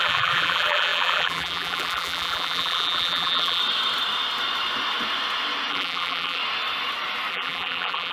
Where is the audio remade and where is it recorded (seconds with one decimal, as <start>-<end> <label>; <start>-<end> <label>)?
0.0-3.6 remade; 3.6-5.7 recorded; 5.7-6.4 remade; 6.4-7.3 recorded; 7.3-8.1 remade